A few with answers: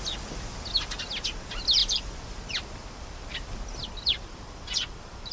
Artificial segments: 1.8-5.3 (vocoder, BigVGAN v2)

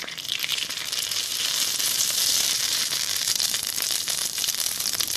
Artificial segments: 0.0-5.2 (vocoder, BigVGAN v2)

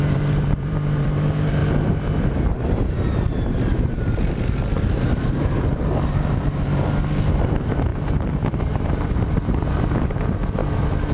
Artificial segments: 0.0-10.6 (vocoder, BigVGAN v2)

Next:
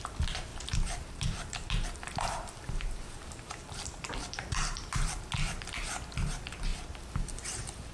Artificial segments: 0.5-5.2 (vocoder, BigVGAN v2)

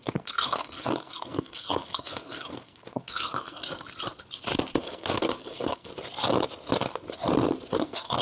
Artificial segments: 0.0-3.6 (codec, SNAC); 4.8-5.9; 7.7-8.2

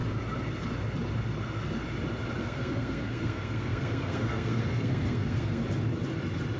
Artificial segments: 2.4-5.6 (codec, SNAC)